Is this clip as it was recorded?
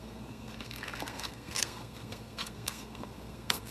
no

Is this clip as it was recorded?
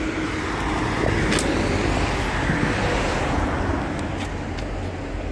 yes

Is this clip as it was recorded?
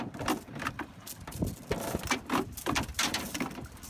no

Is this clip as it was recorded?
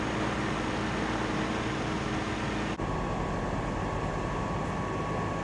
yes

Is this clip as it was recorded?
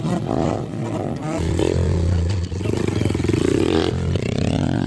no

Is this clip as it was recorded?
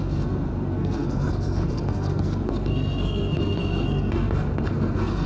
no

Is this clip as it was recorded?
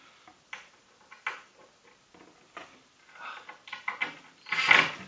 yes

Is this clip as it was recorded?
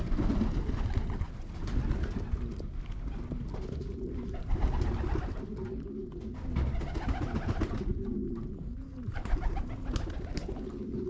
yes